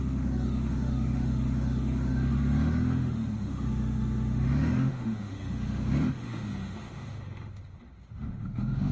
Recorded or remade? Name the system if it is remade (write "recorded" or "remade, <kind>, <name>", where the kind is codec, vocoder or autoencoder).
remade, autoencoder, DAC-VAE